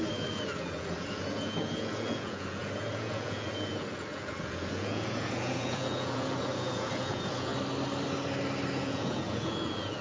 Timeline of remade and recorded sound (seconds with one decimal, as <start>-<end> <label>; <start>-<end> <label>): 0.0-7.5 remade; 7.5-8.8 recorded; 8.8-10.0 remade